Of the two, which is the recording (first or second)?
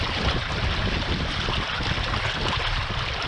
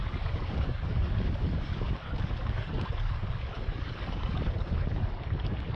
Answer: first